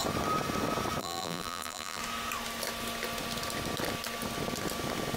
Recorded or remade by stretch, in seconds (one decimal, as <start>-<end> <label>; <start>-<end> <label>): 0.0-1.0 recorded; 1.0-2.0 remade; 2.0-5.2 recorded